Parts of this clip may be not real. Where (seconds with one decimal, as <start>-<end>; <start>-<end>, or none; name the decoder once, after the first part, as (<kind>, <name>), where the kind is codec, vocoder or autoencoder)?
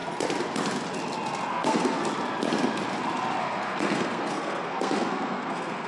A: 1.5-2.0 (codec, SNAC); 3.4-5.9